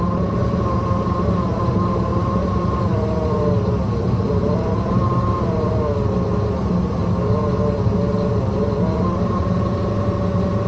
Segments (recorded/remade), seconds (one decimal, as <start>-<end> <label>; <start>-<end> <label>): 0.0-10.7 recorded